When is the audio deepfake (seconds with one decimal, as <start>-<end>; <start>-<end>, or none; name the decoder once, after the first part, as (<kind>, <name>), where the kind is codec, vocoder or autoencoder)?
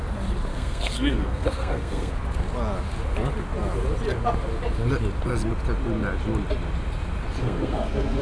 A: 0.5-2.1 (codec, SNAC); 7.4-8.2